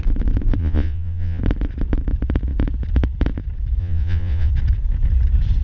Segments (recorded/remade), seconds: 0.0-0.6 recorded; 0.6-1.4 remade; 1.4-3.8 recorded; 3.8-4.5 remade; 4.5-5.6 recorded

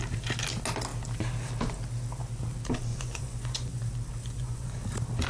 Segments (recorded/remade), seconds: 0.0-2.9 recorded; 2.9-3.8 remade; 3.8-4.2 recorded; 4.2-4.8 remade; 4.8-5.3 recorded

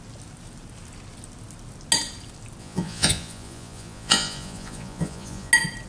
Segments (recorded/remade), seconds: 0.0-2.6 recorded; 2.6-5.5 remade; 5.5-5.9 recorded

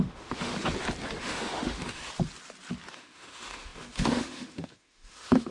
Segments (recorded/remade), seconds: 0.0-0.5 remade; 0.5-1.2 recorded; 1.2-2.0 remade; 2.0-2.9 recorded; 2.9-5.5 remade

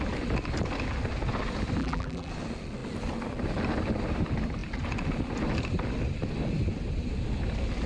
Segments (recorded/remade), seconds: 0.0-1.8 recorded; 1.8-2.3 remade; 2.3-7.9 recorded

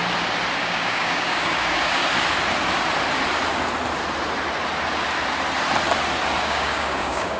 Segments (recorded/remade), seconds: 0.0-0.6 recorded; 0.6-2.0 remade; 2.0-6.4 recorded; 6.4-7.4 remade

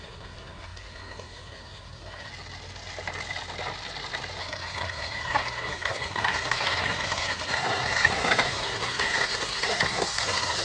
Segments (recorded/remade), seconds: 0.0-2.3 remade; 2.3-4.4 recorded; 4.4-10.6 remade